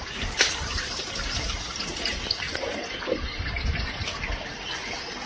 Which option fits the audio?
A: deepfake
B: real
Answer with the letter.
B